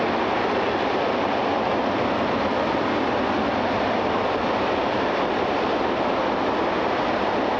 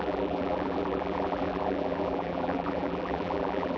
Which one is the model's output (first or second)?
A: second